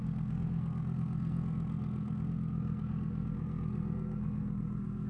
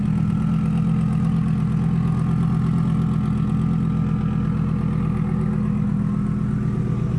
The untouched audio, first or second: second